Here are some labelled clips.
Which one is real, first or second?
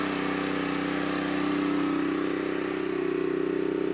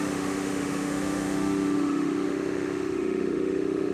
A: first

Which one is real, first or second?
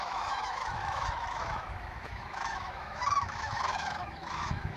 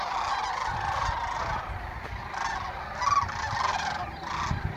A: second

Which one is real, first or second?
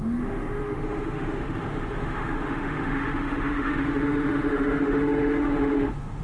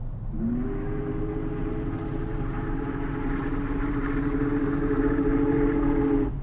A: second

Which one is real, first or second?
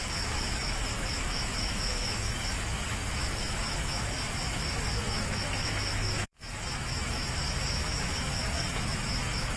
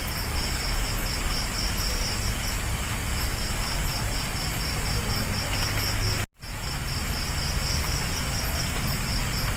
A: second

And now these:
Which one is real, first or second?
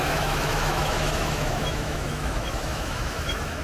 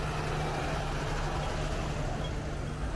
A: second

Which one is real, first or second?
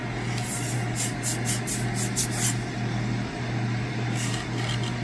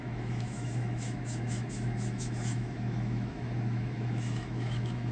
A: first